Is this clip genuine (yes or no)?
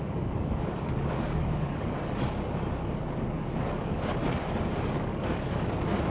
no